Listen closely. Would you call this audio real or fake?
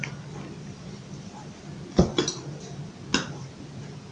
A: real